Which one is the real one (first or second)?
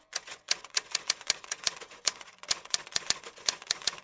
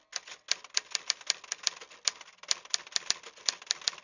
second